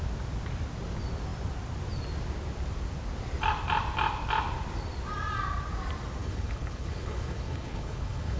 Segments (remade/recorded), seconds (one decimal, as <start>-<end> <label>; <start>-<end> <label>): 0.0-6.2 recorded; 6.2-8.4 remade